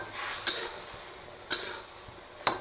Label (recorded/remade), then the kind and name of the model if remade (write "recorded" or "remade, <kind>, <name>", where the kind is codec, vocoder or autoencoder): recorded